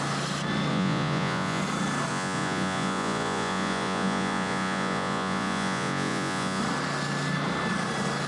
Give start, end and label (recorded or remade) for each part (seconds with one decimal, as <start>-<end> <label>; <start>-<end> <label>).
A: 0.0-0.7 recorded; 0.7-1.6 remade; 1.6-2.1 recorded; 2.1-6.6 remade; 6.6-8.3 recorded